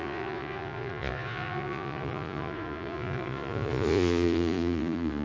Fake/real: fake